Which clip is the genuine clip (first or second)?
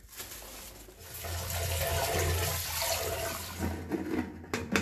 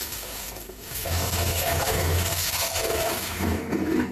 first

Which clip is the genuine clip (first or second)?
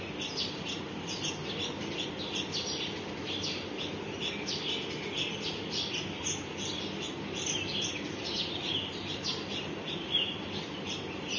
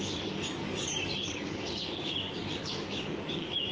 first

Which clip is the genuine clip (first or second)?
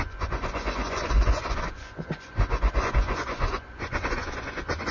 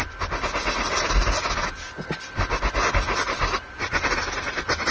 second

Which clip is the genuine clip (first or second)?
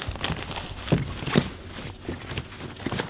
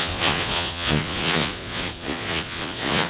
first